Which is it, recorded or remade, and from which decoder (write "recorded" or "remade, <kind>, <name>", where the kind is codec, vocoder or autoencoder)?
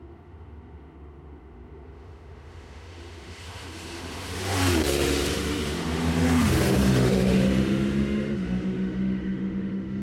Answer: remade, autoencoder, DAC-VAE